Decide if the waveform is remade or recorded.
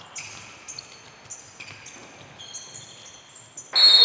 recorded